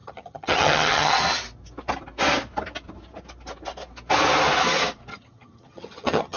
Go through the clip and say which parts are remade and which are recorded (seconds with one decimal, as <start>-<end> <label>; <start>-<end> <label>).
0.0-1.2 remade; 1.2-5.1 recorded; 5.1-6.4 remade